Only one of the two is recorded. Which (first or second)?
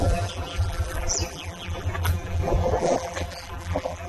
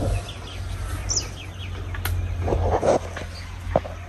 second